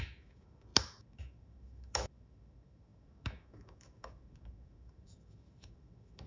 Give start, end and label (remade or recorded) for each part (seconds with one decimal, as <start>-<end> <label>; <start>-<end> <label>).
0.0-6.3 remade